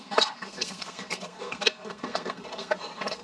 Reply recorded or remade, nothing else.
remade